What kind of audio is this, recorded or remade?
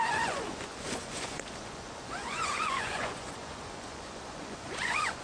remade